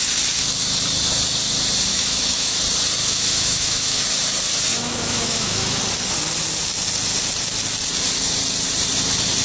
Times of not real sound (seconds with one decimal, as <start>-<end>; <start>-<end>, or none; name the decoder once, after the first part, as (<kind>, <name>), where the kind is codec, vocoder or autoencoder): 1.9-2.6 (autoencoder, DAC-VAE); 3.0-4.0; 4.7-5.8